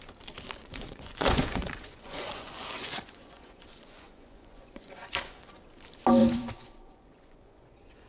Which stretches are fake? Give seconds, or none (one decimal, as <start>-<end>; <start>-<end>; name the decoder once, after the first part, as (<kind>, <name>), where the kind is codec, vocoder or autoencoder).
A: 0.6-5.5 (vocoder, Vocos); 6.2-8.1